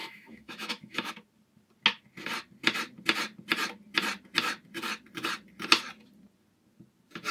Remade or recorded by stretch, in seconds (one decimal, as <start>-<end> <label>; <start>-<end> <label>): 0.0-1.1 remade; 1.1-7.3 recorded